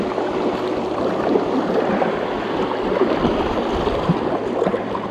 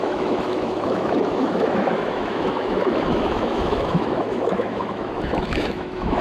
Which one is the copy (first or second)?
second